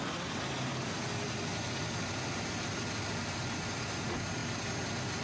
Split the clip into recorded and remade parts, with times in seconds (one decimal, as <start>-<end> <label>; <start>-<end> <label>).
0.0-5.2 recorded